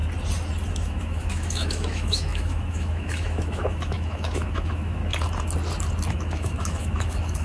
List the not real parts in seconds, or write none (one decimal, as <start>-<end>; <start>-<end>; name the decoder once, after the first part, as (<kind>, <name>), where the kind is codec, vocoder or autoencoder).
0.7-5.0 (autoencoder, DAC-VAE); 6.1-7.4